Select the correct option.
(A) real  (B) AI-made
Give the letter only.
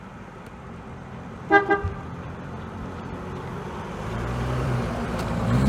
B